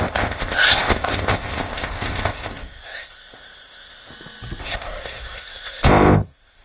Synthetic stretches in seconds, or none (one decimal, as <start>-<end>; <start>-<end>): 0.0-4.1; 4.6-6.6